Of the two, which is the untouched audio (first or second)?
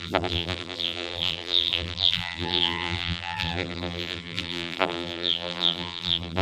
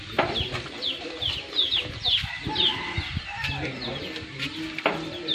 second